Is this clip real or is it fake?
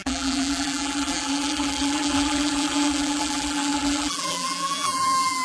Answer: fake